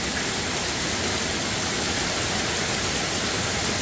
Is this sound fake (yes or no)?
no